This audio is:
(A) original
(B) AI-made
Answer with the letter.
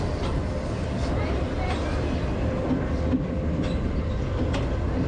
A